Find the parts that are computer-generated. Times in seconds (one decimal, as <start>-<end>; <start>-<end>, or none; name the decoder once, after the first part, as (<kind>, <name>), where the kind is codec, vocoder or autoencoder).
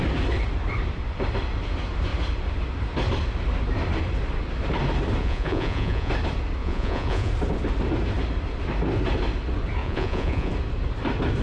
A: 5.2-6.1 (vocoder, Vocos); 6.6-7.3; 9.8-10.5